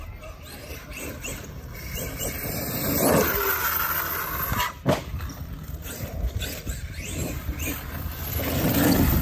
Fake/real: real